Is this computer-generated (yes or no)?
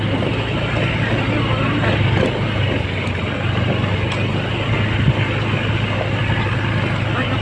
no